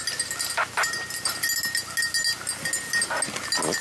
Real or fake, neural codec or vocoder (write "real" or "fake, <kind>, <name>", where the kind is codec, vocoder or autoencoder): real